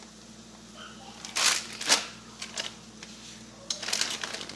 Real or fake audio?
real